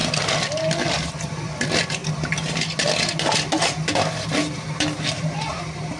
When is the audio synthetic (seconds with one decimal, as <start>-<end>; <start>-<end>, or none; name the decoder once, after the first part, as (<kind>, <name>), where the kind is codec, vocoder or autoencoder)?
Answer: 0.0-1.1 (vocoder, BigVGAN v2); 2.0-5.6